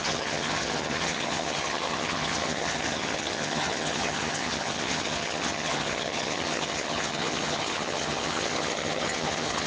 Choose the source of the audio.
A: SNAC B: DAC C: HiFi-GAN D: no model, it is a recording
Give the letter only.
C